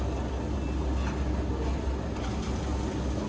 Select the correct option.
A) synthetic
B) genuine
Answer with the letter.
B